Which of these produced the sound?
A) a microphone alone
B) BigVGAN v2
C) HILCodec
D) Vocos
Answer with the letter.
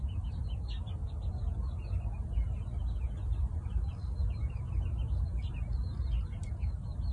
A